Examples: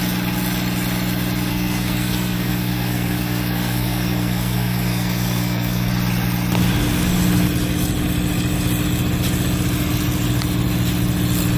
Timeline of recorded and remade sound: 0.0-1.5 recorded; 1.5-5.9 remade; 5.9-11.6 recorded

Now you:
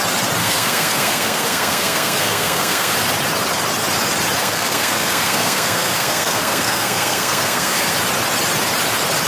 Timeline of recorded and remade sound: 0.0-0.4 recorded; 0.4-2.9 remade; 2.9-4.4 recorded; 4.4-7.9 remade; 7.9-9.3 recorded

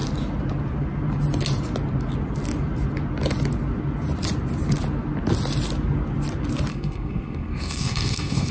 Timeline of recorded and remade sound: 0.0-6.7 recorded; 6.7-8.5 remade

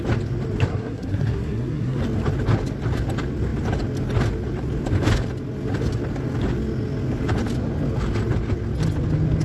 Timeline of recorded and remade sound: 0.0-0.7 recorded; 0.7-2.0 remade; 2.0-9.4 recorded